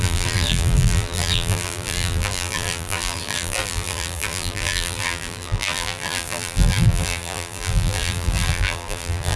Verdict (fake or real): fake